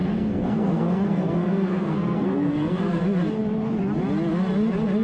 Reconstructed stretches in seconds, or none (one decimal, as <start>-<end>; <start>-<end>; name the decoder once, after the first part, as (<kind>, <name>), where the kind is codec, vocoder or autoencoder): 0.0-3.0 (codec, SNAC)